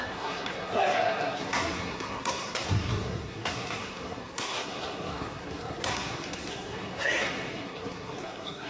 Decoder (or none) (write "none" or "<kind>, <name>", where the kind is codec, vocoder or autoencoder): codec, SNAC